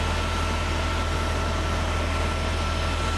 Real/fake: real